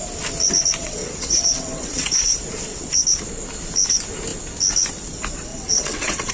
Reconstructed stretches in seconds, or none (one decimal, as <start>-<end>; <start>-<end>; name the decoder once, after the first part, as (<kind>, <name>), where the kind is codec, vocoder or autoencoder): 0.8-2.4 (vocoder, WaveNeXt); 5.5-6.3